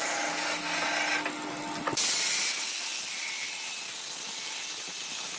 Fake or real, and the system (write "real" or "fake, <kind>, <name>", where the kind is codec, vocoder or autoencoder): real